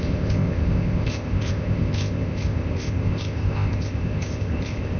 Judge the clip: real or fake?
fake